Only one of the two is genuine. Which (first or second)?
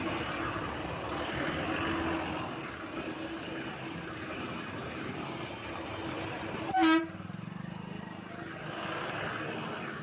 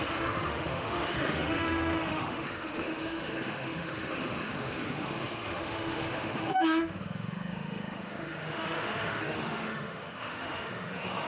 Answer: first